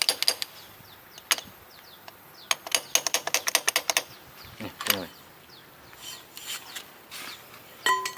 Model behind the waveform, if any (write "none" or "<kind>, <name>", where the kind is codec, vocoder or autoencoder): none